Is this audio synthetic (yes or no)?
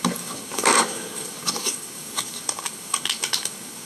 yes